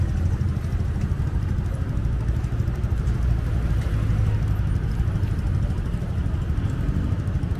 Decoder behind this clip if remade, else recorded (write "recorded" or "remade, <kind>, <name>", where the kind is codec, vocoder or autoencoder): recorded